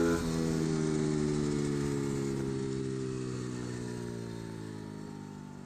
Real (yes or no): yes